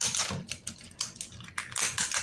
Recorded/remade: recorded